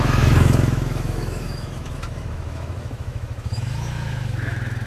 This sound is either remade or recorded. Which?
remade